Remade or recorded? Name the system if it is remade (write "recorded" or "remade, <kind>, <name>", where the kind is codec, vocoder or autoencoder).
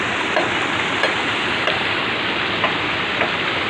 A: recorded